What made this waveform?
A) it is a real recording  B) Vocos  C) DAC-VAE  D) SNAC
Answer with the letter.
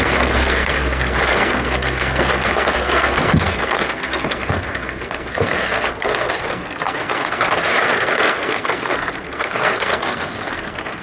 D